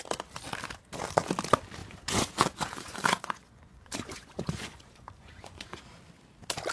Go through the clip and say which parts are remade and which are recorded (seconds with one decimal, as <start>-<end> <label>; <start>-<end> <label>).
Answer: 0.0-1.8 recorded; 1.8-5.8 remade; 5.8-6.7 recorded